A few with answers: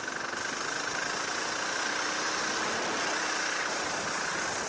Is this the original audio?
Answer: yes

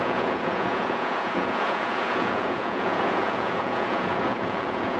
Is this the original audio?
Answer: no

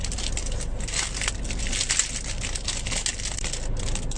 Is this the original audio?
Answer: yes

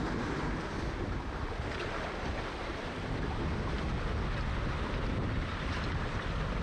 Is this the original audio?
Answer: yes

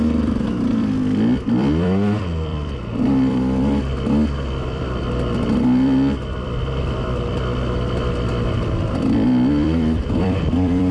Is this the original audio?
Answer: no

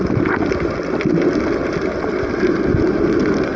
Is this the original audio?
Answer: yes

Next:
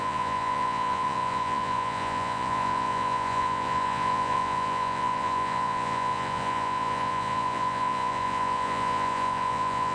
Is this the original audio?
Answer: no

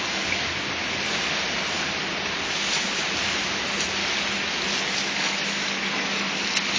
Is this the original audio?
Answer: yes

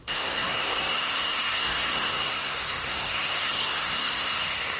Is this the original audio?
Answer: no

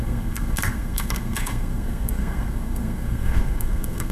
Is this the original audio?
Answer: no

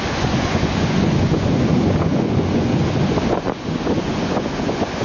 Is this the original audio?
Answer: no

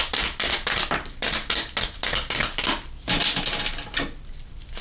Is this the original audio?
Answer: yes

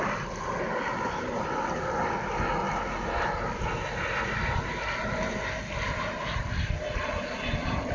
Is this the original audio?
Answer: yes